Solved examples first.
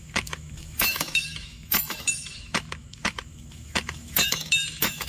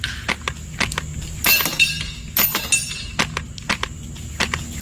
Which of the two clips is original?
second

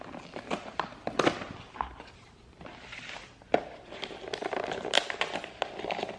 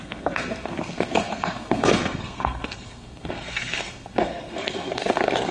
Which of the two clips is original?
first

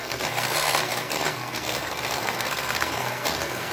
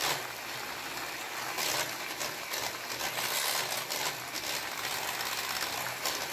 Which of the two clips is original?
second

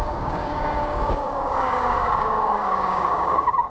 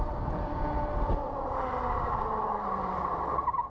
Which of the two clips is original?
second